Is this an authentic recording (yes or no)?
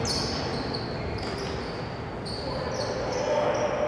yes